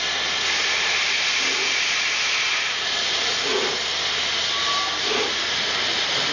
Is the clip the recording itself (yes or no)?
no